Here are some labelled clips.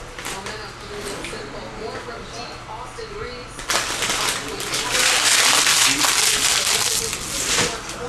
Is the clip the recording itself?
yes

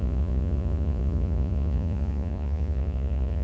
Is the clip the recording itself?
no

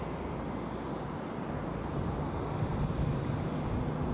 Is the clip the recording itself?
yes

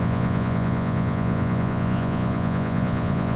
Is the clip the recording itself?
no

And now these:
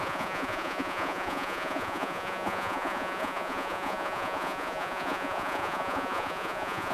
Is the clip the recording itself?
no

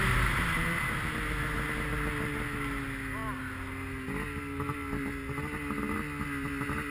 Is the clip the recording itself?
yes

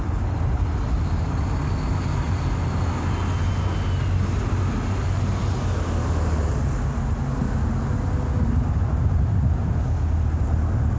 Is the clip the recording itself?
yes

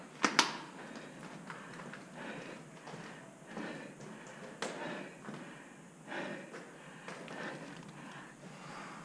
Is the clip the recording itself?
yes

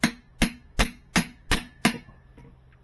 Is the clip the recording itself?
yes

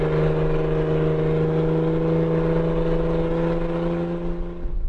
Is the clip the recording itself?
yes